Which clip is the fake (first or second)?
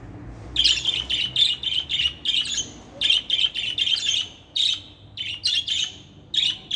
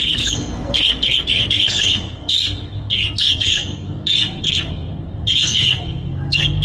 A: second